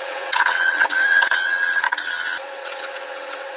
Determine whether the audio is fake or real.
fake